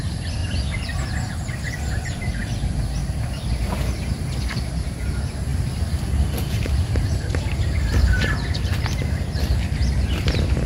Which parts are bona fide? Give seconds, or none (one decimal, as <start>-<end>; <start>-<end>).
0.4-1.0